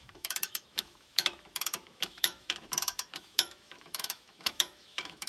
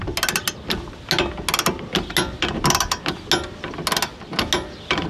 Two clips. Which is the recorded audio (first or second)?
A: second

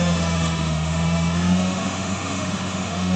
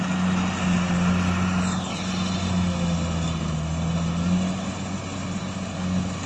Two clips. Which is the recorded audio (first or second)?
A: second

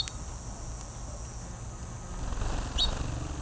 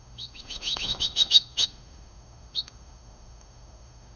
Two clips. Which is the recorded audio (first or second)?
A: first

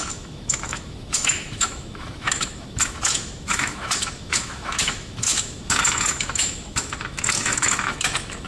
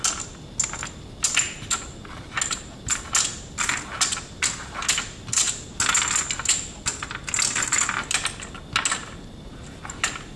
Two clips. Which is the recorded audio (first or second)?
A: second